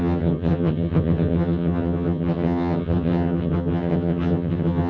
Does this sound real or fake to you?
fake